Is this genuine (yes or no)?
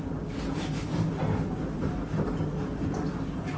yes